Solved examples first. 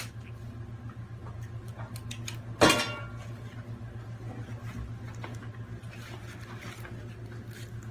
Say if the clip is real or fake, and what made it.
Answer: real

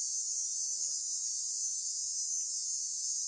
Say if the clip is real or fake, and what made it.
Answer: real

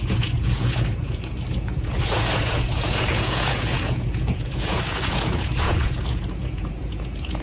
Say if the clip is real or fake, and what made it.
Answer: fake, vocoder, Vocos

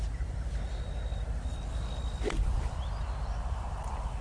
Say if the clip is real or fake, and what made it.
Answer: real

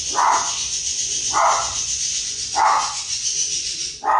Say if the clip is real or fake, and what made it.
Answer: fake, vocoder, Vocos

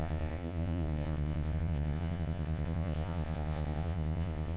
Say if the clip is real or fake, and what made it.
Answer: fake, vocoder, Vocos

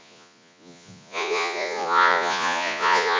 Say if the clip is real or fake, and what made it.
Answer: fake, vocoder, Vocos